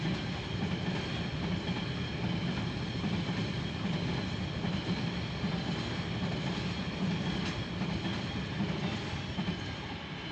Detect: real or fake real